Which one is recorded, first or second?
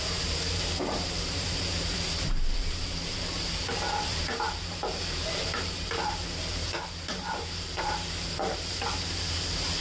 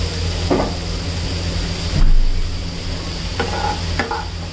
second